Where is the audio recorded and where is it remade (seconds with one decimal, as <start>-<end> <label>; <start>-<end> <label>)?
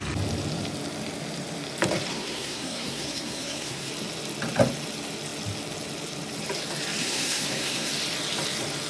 0.0-2.1 recorded; 2.1-3.9 remade; 3.9-7.0 recorded; 7.0-7.9 remade; 7.9-8.9 recorded